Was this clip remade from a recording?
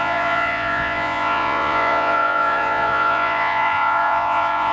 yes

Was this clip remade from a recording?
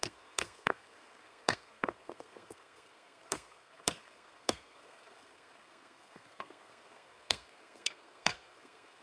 yes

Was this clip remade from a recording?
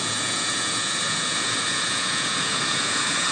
yes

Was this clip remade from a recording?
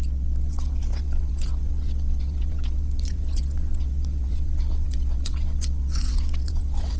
yes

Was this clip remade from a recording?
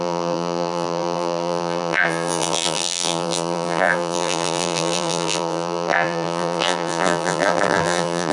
yes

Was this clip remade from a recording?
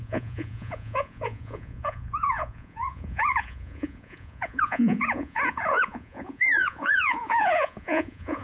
yes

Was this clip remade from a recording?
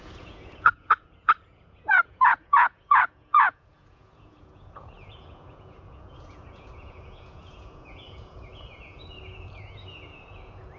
yes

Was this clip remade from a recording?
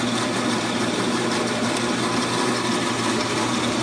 yes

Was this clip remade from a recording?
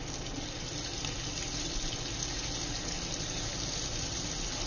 no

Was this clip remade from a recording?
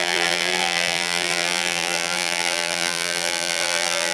yes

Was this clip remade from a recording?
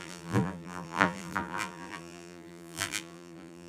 yes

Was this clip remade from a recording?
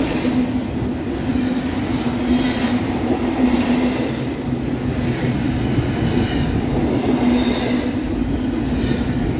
no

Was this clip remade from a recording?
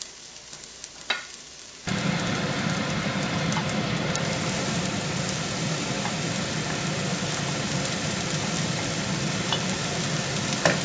yes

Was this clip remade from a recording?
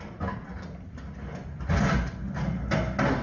no